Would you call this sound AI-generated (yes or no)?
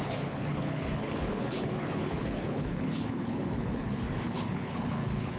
yes